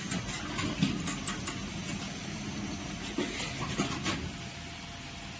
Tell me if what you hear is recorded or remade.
recorded